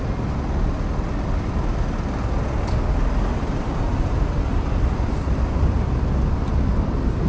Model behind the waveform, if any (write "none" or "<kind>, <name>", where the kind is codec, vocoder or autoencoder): none